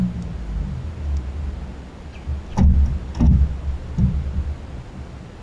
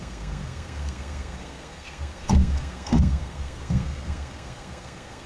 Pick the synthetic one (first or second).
second